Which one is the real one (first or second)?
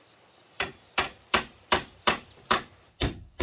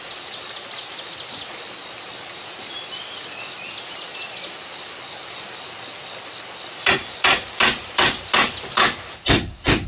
second